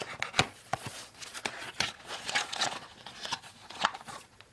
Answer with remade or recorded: remade